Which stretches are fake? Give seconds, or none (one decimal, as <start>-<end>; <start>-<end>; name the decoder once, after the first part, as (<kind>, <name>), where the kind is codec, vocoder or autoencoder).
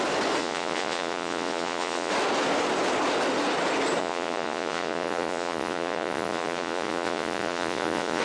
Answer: 0.4-2.1 (vocoder, Vocos); 4.0-8.2